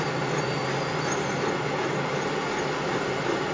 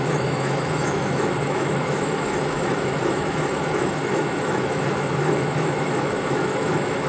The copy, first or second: second